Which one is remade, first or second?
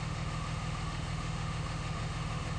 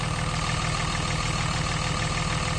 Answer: first